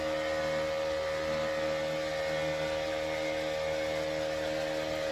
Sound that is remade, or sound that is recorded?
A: recorded